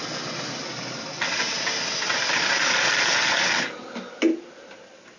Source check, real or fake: real